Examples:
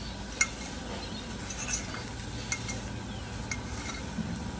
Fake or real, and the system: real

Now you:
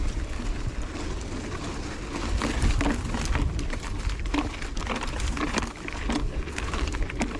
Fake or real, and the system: real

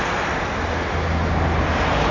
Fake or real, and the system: real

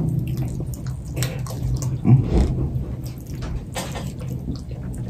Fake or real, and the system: real